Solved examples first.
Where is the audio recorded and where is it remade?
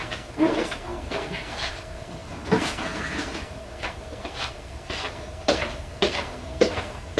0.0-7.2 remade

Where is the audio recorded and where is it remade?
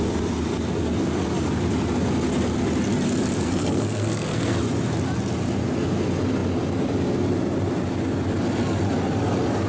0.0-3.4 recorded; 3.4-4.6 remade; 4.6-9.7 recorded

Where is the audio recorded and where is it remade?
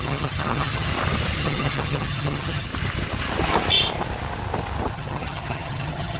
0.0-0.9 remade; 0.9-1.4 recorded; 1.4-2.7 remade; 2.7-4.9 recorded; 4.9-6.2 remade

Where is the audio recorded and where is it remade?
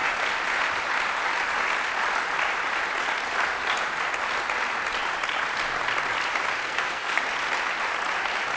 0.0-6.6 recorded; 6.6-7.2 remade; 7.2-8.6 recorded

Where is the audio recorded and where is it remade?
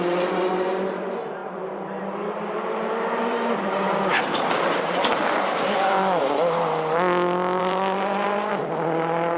0.0-1.4 recorded; 1.4-4.2 remade; 4.2-7.6 recorded; 7.6-8.5 remade; 8.5-9.4 recorded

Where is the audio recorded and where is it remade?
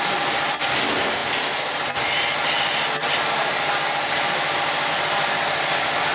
0.0-1.2 remade; 1.2-4.9 recorded; 4.9-6.1 remade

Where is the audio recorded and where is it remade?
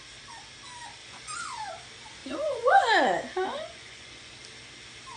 0.0-1.0 recorded; 1.0-1.7 remade; 1.7-2.2 recorded; 2.2-4.3 remade; 4.3-5.2 recorded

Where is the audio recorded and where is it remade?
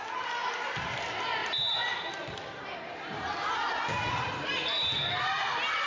0.0-1.4 recorded; 1.4-2.1 remade; 2.1-3.4 recorded; 3.4-4.3 remade; 4.3-5.9 recorded